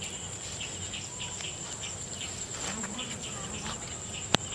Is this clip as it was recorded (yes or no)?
yes